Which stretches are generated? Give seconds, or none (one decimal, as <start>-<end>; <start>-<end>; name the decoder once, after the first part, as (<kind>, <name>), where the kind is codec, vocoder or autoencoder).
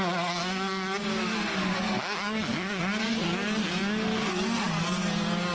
1.5-2.8 (codec, DAC); 4.1-4.7